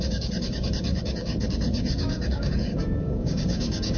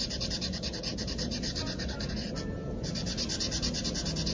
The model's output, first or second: first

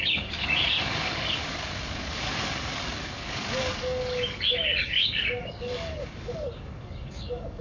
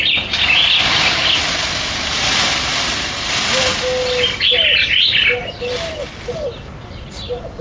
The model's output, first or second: first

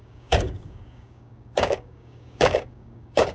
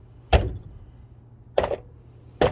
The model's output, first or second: first